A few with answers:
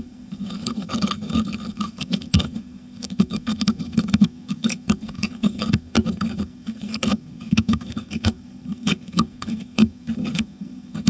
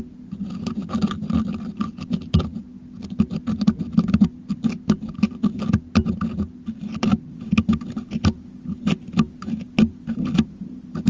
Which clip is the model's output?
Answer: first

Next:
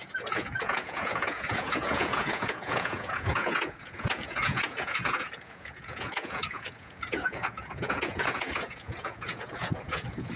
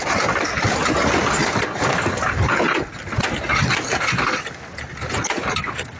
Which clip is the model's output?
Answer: first